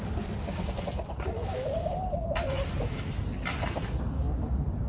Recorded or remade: recorded